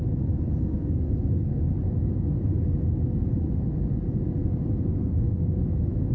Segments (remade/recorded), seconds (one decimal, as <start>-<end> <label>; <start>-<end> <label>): 0.0-0.6 recorded; 0.6-1.6 remade; 1.6-4.9 recorded; 4.9-5.6 remade; 5.6-6.1 recorded